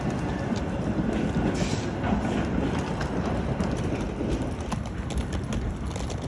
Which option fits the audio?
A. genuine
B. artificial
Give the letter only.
A